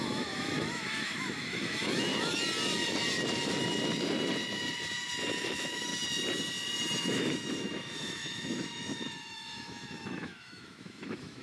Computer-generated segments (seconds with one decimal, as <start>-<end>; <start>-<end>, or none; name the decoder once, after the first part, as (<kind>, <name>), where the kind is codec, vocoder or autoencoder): 0.0-2.1 (autoencoder, DAC-VAE); 5.4-5.9; 7.0-11.4